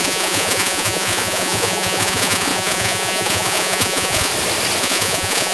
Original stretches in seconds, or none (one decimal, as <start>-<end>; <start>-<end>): 4.3-4.8